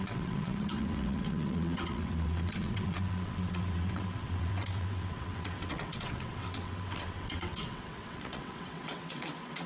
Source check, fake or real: fake